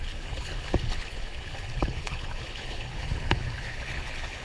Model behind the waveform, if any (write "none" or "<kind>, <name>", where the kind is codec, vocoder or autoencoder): codec, HILCodec